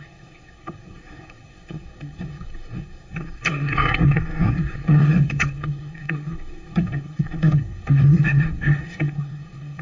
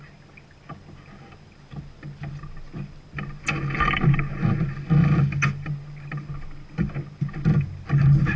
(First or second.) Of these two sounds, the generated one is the first